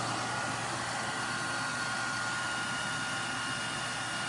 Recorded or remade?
recorded